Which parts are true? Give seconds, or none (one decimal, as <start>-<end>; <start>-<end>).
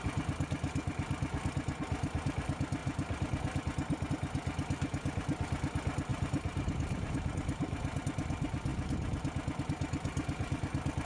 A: 0.0-6.1; 8.0-11.1